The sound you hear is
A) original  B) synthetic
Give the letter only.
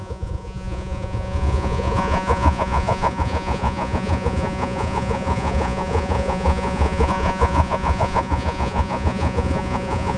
B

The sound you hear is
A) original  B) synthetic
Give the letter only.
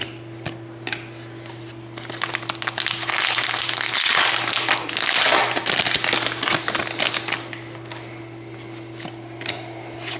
A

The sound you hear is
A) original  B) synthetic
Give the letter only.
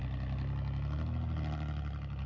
A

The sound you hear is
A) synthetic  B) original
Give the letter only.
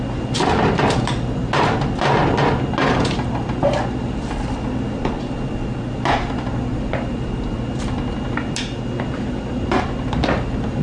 B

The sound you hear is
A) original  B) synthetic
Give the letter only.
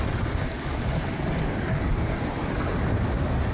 A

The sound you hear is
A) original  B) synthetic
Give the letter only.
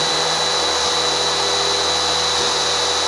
A